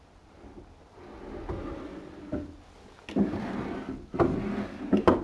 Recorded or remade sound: recorded